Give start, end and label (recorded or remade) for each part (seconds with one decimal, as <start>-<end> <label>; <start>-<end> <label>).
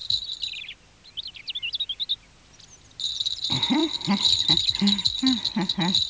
0.0-6.1 recorded